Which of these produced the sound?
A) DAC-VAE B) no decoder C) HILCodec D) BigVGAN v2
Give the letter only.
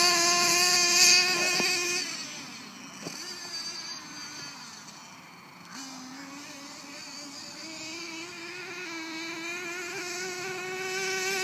B